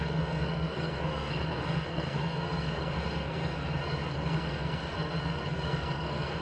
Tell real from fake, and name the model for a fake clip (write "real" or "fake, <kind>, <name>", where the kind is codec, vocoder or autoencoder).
fake, codec, SNAC